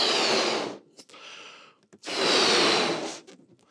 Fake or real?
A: real